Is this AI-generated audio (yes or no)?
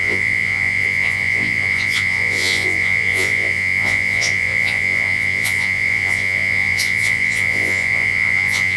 yes